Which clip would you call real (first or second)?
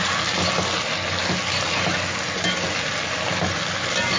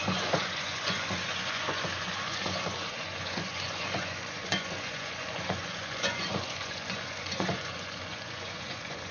first